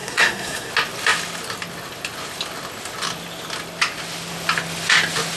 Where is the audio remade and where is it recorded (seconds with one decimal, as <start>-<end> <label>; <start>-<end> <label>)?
0.0-0.7 remade; 0.7-5.4 recorded